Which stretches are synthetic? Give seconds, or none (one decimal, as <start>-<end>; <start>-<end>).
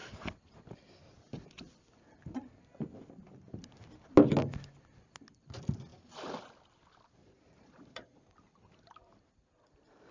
7.2-8.2